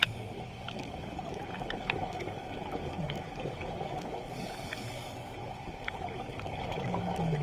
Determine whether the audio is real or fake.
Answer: fake